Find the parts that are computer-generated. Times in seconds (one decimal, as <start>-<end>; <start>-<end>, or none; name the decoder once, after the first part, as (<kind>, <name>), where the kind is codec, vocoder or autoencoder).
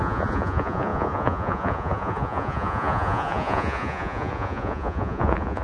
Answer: 0.0-5.6 (vocoder, Vocos)